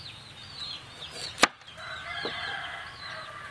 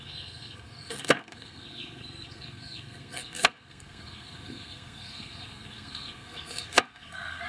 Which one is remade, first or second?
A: second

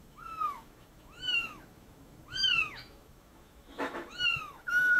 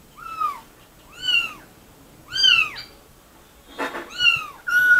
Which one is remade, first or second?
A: first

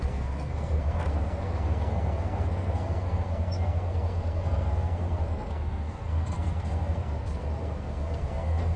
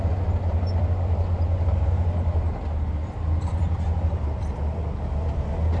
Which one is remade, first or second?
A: first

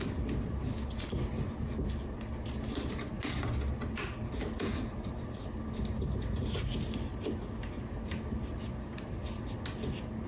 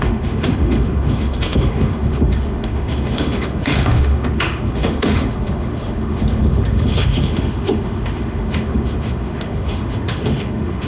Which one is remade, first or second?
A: second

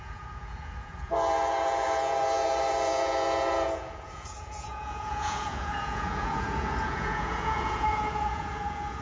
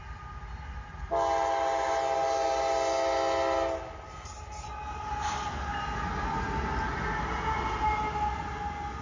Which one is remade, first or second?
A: first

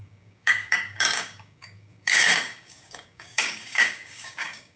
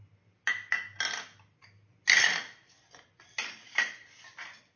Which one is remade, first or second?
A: first